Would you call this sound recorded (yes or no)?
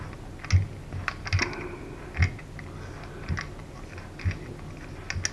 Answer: yes